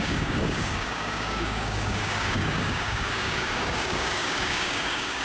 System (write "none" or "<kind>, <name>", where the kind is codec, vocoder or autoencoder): codec, DAC